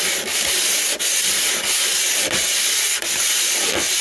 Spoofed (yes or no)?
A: no